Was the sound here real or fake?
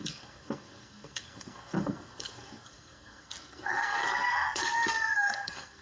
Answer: fake